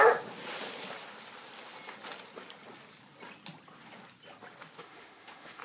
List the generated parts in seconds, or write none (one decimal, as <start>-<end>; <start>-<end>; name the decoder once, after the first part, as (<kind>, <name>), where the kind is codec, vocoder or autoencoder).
4.8-5.6 (autoencoder, DAC-VAE)